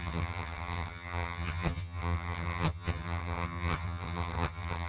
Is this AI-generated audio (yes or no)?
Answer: yes